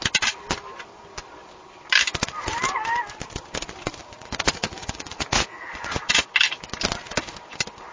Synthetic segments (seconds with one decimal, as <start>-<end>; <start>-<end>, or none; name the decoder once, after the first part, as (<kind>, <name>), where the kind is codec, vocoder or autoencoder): 4.0-6.3 (vocoder, Vocos)